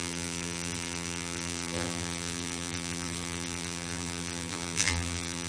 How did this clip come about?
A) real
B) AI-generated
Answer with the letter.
B